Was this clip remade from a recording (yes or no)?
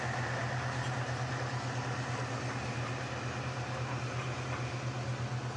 no